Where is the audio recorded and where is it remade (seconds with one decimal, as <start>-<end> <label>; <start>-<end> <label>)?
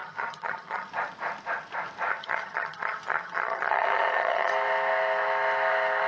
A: 0.0-0.9 remade; 0.9-2.1 recorded; 2.1-4.5 remade; 4.5-6.1 recorded